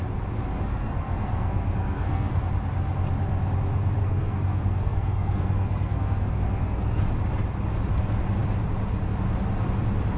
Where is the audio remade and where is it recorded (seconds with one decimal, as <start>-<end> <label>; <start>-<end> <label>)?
0.0-0.7 recorded; 0.7-2.4 remade; 2.4-4.0 recorded; 4.0-7.0 remade; 7.0-10.2 recorded